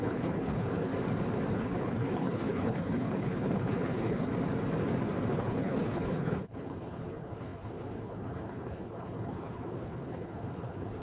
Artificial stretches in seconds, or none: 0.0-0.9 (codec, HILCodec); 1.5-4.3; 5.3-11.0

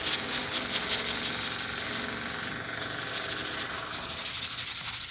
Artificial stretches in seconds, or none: none

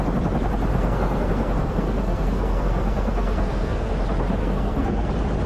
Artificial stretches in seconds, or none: 0.7-4.0 (codec, SNAC); 4.4-5.1

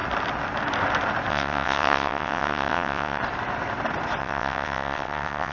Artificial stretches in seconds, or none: 1.3-3.2 (vocoder, WaveNeXt); 4.2-5.5

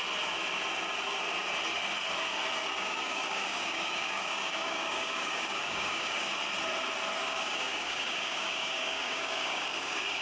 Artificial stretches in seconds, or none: 2.6-6.3 (codec, DAC); 7.2-10.2